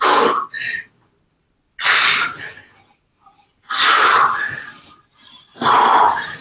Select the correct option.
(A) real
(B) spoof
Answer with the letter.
A